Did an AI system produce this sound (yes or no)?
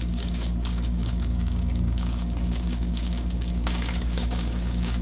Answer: yes